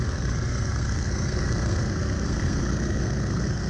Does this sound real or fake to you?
fake